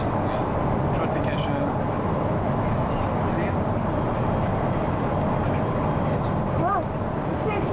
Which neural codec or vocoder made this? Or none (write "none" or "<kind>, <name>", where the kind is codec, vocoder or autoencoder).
none